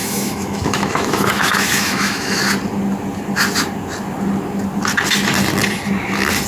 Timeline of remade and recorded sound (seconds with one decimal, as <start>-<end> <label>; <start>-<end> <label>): 0.0-2.4 remade; 2.4-6.5 recorded